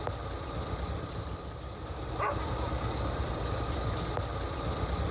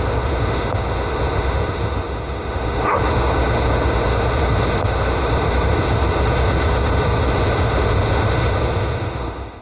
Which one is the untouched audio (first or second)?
first